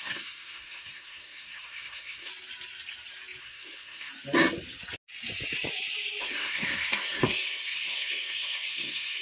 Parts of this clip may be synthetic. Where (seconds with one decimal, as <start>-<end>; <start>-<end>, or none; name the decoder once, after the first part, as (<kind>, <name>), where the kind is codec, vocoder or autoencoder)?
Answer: 0.0-2.3 (codec, SNAC); 3.4-4.1; 6.2-9.2